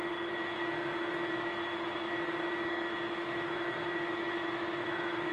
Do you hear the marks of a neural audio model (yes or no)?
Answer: yes